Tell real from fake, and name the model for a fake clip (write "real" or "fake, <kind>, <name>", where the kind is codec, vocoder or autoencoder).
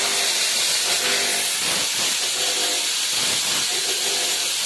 real